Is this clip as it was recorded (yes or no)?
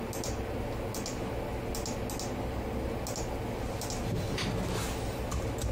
yes